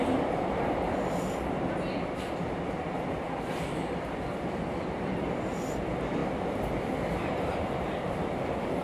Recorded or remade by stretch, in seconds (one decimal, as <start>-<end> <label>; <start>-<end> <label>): 0.0-8.8 remade